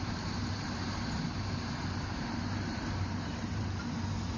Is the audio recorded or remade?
remade